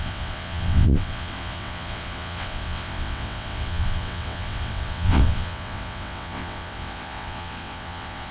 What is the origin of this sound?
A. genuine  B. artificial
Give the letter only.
B